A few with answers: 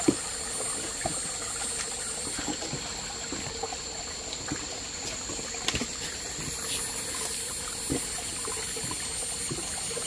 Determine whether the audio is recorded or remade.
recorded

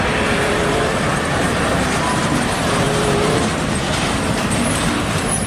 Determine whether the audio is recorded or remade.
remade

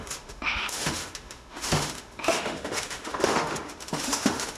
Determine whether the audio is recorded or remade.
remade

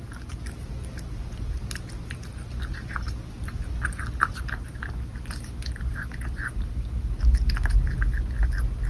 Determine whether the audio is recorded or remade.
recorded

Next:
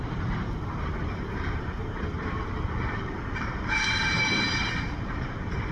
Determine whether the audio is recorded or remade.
remade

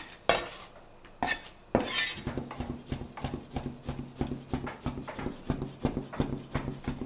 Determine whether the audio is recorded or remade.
recorded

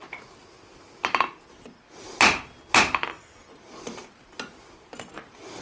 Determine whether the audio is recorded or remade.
recorded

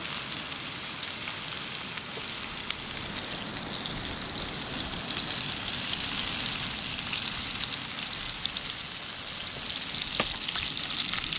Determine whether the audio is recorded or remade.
recorded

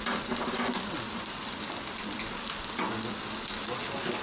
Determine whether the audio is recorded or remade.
recorded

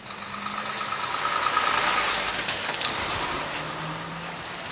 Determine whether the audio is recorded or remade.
recorded